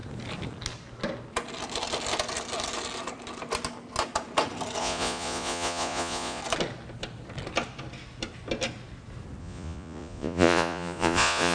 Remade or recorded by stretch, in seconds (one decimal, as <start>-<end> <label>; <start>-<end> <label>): 0.0-4.8 recorded; 4.8-6.4 remade; 6.4-9.4 recorded; 9.4-11.5 remade